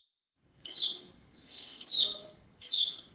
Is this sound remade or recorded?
remade